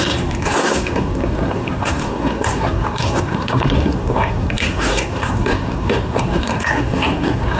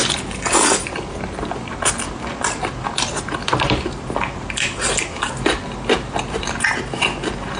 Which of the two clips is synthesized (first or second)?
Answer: first